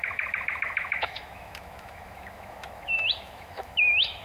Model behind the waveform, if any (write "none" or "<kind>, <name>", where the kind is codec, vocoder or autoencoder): autoencoder, DAC-VAE